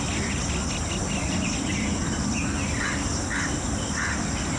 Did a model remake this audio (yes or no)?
no